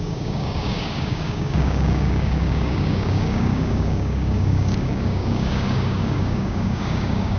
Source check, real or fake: fake